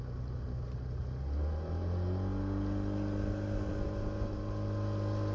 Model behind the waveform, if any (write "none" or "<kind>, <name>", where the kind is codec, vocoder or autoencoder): none